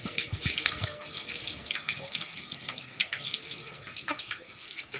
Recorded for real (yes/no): no